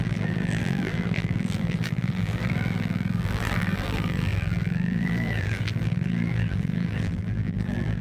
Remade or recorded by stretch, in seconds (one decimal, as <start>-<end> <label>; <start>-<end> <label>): 0.0-8.0 remade